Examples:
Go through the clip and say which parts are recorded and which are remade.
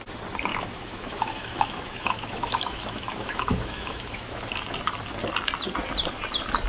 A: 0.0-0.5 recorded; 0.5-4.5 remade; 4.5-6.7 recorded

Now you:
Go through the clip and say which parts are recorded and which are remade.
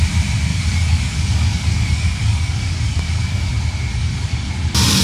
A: 0.0-0.5 recorded; 0.5-3.5 remade; 3.5-3.9 recorded; 3.9-4.5 remade; 4.5-5.0 recorded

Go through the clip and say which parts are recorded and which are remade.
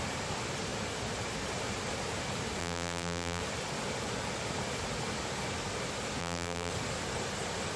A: 0.0-2.6 recorded; 2.6-3.4 remade; 3.4-6.2 recorded; 6.2-6.7 remade; 6.7-7.8 recorded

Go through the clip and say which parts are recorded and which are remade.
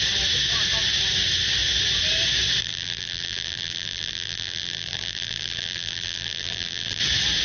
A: 0.0-2.6 recorded; 2.6-7.0 remade; 7.0-7.4 recorded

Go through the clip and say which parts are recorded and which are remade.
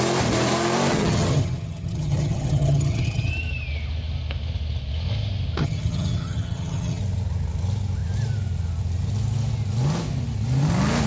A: 0.0-0.9 recorded; 0.9-3.3 remade; 3.3-5.6 recorded; 5.6-7.0 remade; 7.0-11.1 recorded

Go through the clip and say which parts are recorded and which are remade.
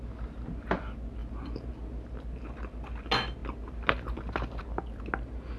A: 0.0-5.6 recorded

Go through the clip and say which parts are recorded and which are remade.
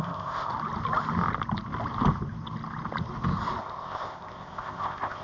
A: 0.0-0.5 remade; 0.5-3.6 recorded; 3.6-5.2 remade